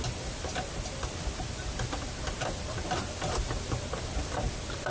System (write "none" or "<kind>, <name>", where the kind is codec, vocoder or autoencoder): none